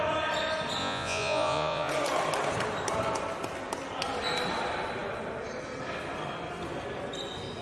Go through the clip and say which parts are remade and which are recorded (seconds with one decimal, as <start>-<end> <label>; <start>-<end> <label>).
0.0-0.8 recorded; 0.8-1.9 remade; 1.9-7.6 recorded